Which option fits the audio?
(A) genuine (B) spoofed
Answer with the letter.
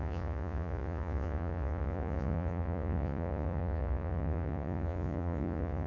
B